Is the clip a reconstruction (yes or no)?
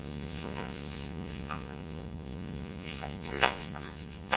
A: yes